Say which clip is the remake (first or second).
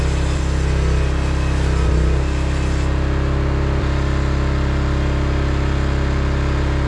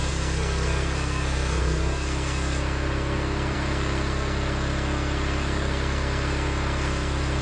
second